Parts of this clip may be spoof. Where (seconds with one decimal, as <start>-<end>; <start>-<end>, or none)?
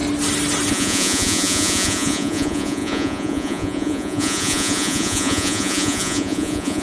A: 0.7-6.8